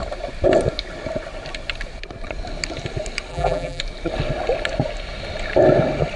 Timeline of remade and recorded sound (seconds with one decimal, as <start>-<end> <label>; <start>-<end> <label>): 0.0-3.3 recorded; 3.3-3.8 remade; 3.8-6.2 recorded